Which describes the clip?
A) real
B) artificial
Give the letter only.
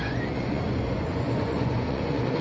B